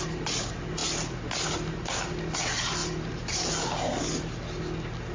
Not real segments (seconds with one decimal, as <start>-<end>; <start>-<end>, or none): 0.8-2.3; 2.8-4.2